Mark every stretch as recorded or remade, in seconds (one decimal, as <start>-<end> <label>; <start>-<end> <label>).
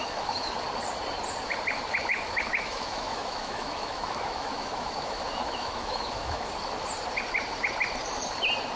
0.0-0.5 remade; 0.5-2.1 recorded; 2.1-6.5 remade; 6.5-8.8 recorded